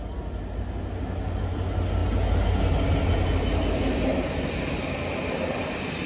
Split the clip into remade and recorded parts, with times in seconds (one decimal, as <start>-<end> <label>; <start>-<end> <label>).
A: 0.0-6.1 recorded